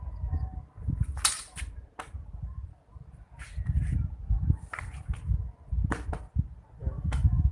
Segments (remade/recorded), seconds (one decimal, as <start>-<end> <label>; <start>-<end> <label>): 0.0-6.8 recorded; 6.8-7.5 remade